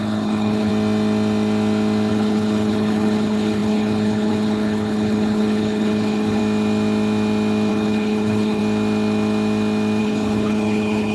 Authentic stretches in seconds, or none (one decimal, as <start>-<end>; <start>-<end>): 0.7-2.1; 6.4-7.7; 8.6-10.0